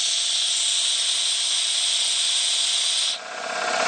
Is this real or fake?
fake